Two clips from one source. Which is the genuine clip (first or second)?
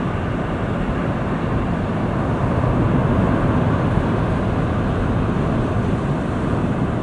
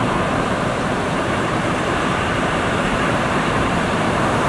first